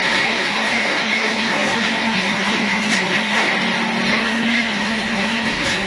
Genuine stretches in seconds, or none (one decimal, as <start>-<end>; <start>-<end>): 3.5-4.1